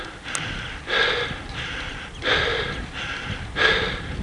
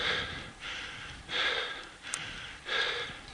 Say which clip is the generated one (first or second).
second